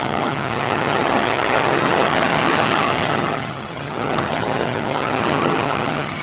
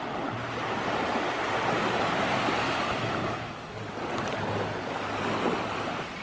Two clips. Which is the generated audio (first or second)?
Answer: first